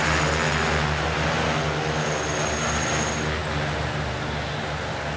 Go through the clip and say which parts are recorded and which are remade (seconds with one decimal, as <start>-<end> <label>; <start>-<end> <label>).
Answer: 0.0-5.2 recorded